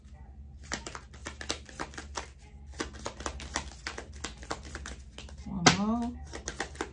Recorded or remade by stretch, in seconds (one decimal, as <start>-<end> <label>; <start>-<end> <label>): 0.0-6.9 recorded